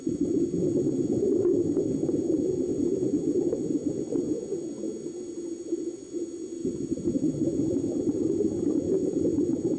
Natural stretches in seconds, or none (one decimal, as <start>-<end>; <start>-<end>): 0.0-9.8